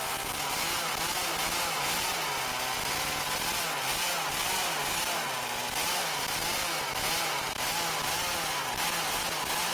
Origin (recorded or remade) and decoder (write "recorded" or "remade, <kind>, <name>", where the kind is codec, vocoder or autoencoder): recorded